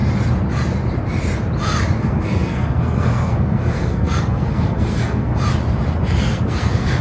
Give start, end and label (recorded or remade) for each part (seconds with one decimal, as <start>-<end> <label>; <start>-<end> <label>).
0.0-2.0 recorded; 2.0-5.3 remade; 5.3-6.2 recorded; 6.2-7.0 remade